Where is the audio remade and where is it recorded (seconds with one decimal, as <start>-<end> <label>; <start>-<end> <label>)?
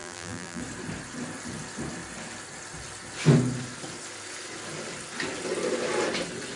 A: 0.0-0.6 remade; 0.6-6.6 recorded